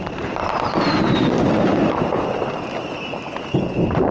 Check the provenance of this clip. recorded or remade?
remade